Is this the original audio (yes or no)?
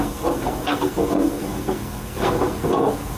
no